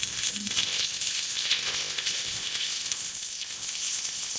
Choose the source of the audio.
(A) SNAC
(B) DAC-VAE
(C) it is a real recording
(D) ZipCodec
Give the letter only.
D